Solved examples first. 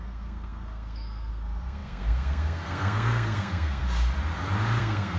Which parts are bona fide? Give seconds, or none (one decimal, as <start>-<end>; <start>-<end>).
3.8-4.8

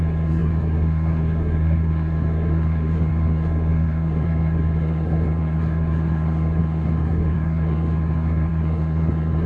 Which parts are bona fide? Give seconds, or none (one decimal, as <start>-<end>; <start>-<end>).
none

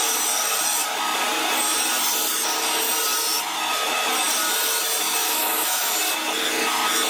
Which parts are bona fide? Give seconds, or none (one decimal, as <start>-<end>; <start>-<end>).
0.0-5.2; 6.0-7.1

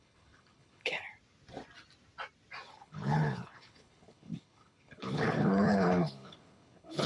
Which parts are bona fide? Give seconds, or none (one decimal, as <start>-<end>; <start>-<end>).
1.1-2.7

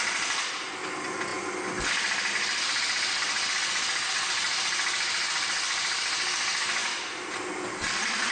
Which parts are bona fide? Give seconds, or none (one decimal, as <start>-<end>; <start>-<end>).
0.0-8.3

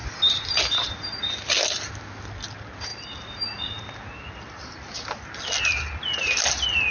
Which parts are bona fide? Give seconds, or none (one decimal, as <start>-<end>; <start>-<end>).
0.0-6.9

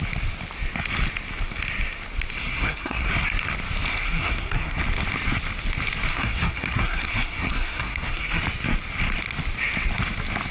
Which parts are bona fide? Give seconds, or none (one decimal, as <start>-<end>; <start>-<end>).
0.0-2.4; 3.1-3.9; 4.8-6.1; 8.4-10.5